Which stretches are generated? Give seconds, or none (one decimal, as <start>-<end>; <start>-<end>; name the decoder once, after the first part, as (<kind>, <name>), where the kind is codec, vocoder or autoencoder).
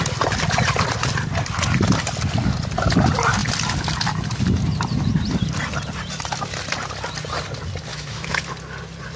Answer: 7.9-8.4 (autoencoder, DAC-VAE)